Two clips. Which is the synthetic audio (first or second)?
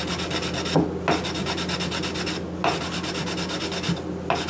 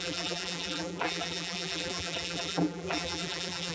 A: second